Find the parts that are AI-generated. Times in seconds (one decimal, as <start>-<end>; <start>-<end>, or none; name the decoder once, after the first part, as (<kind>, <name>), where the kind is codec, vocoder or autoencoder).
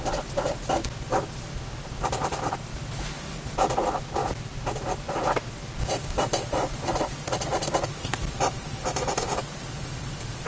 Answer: 0.0-2.7 (vocoder, BigVGAN v2); 3.7-10.5